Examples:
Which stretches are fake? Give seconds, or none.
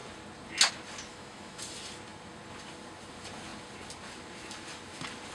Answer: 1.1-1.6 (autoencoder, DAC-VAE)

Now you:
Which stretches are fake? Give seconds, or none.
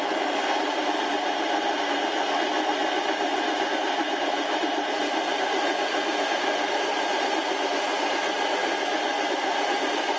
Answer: 0.6-8.6 (vocoder, BigVGAN v2); 9.3-10.2